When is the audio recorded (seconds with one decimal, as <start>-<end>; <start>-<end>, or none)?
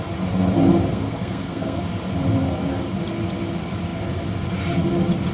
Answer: 0.0-0.9; 1.8-5.3